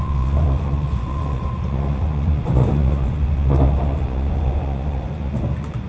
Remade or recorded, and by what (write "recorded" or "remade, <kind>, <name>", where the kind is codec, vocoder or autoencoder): remade, vocoder, Vocos